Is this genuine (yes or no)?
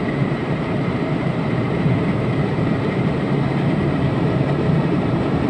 no